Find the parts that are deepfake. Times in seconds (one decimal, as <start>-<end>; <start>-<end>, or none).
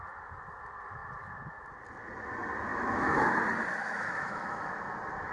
2.7-3.4; 3.8-4.8